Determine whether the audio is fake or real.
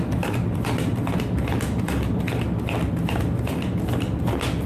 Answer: real